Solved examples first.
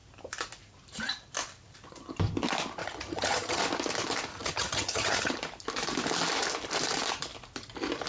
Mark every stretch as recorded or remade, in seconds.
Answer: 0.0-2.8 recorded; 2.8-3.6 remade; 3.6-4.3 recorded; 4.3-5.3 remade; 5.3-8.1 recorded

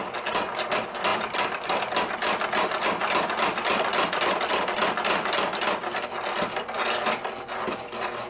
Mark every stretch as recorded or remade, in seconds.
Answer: 0.0-8.3 recorded